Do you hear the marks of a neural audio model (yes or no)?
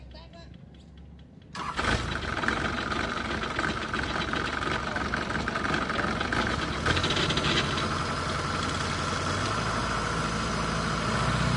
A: no